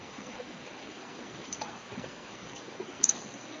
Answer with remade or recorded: remade